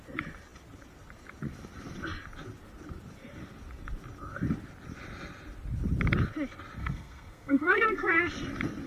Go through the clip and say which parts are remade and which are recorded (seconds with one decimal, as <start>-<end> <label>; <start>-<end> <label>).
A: 0.0-6.8 recorded; 6.8-8.3 remade; 8.3-8.9 recorded